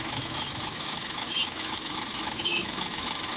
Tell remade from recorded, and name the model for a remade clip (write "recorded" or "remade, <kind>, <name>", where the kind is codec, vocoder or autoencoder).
remade, autoencoder, DAC-VAE